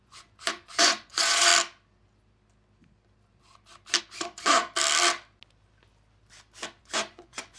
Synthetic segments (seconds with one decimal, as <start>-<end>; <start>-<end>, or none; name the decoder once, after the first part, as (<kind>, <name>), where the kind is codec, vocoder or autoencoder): 0.0-1.5 (vocoder, Vocos); 4.0-4.6; 6.8-7.6